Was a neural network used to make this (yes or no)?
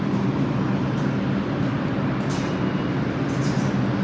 no